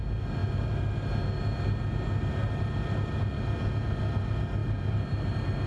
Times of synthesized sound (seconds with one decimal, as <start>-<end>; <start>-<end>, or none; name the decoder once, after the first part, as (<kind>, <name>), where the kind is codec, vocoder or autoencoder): none